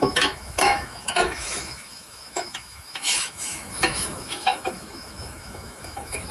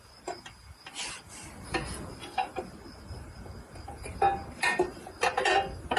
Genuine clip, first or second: second